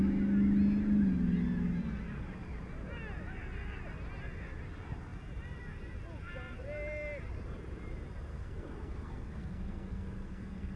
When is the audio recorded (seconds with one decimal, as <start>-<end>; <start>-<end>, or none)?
0.0-8.3